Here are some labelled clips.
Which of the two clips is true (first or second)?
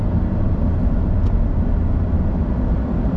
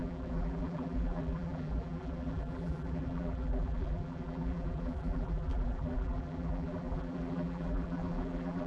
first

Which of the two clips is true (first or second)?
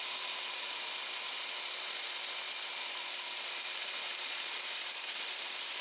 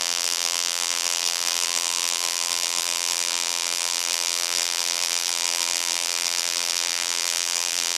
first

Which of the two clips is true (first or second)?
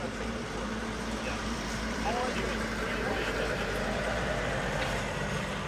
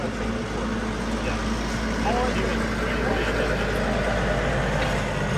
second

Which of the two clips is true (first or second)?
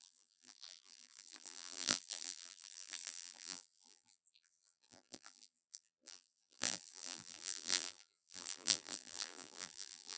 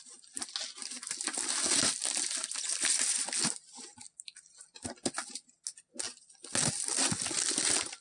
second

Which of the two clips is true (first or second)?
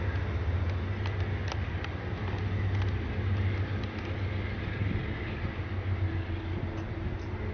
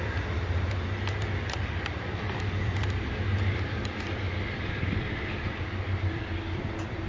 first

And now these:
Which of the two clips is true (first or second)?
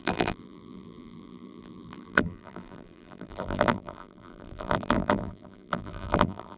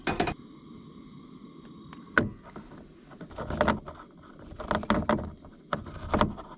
second